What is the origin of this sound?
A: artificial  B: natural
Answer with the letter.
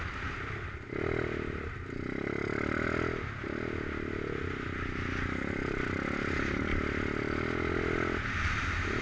B